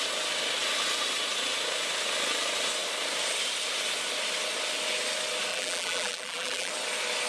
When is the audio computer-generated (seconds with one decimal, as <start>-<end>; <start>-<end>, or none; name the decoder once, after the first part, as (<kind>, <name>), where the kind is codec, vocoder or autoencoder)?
5.5-6.7 (vocoder, BigVGAN v2)